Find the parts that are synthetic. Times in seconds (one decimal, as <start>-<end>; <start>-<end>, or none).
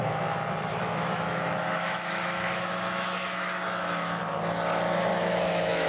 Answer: 0.7-4.2; 5.1-5.9